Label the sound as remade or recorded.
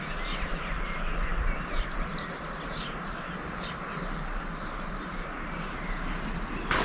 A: recorded